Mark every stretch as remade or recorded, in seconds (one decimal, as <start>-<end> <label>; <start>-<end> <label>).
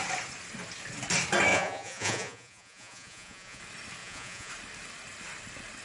0.0-1.5 recorded; 1.5-3.6 remade; 3.6-4.0 recorded; 4.0-4.5 remade; 4.5-5.8 recorded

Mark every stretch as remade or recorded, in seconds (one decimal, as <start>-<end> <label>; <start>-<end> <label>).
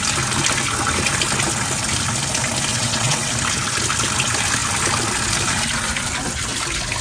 0.0-2.7 recorded; 2.7-3.3 remade; 3.3-7.0 recorded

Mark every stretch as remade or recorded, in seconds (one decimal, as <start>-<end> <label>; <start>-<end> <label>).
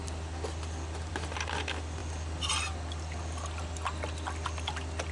0.0-5.1 recorded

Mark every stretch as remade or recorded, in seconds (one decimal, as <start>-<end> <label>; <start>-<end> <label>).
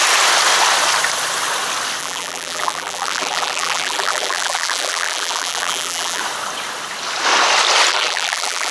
0.0-2.0 recorded; 2.0-6.2 remade; 6.2-7.9 recorded; 7.9-8.7 remade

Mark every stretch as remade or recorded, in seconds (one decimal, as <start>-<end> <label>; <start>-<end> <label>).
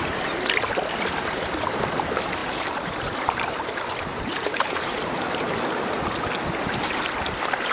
0.0-2.4 recorded; 2.4-5.3 remade; 5.3-7.7 recorded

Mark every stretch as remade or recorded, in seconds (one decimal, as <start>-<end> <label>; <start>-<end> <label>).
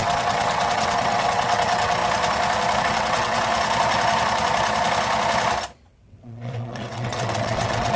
0.0-2.0 remade; 2.0-2.8 recorded; 2.8-3.5 remade; 3.5-5.9 recorded; 5.9-8.0 remade